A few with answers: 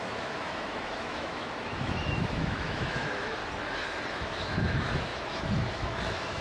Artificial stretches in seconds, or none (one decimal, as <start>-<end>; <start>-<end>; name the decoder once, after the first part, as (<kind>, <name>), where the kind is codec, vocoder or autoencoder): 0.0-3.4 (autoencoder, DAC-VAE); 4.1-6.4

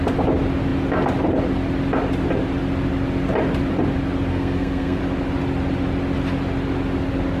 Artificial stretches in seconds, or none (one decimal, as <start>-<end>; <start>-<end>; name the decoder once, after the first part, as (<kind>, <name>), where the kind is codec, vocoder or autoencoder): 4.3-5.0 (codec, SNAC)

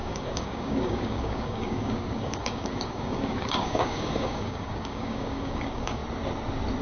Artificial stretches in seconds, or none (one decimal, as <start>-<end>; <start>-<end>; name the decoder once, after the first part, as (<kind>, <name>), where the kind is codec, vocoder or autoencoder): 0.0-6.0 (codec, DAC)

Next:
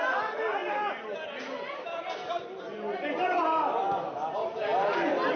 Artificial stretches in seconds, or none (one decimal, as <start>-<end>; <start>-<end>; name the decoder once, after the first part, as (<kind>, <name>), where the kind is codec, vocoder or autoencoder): none

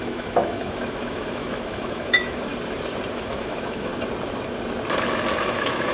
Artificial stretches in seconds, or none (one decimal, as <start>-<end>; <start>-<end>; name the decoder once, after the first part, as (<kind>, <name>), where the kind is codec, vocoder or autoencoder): 0.0-2.5 (autoencoder, DAC-VAE); 3.1-3.9; 5.4-5.9